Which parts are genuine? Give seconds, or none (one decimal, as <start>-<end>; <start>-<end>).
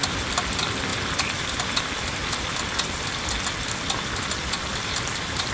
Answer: 0.0-5.5